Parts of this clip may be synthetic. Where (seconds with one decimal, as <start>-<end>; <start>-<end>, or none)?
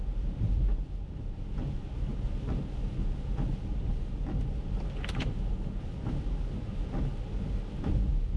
none